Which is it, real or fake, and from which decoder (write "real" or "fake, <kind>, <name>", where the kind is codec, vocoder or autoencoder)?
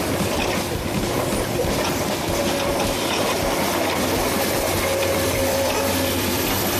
fake, vocoder, BigVGAN v2